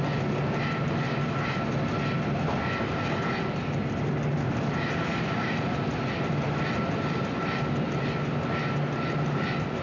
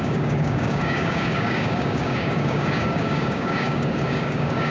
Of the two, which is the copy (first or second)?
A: second